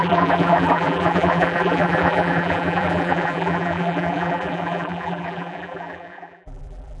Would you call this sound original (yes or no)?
no